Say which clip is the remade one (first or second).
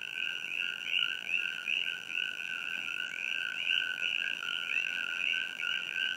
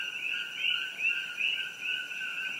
first